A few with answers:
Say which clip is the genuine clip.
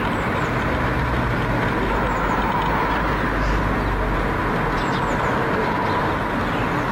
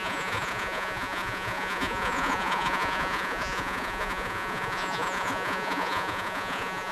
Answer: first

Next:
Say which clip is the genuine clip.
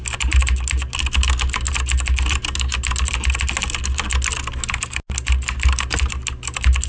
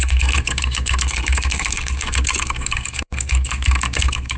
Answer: first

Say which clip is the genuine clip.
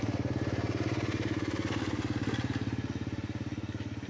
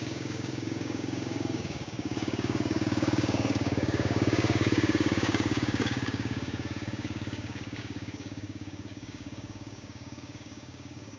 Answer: first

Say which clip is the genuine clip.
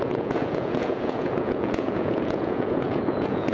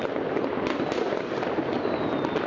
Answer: second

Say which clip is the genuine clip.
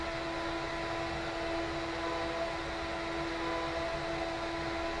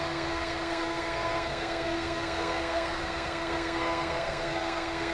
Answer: first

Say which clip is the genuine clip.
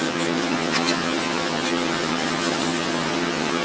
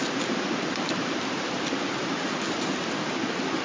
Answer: second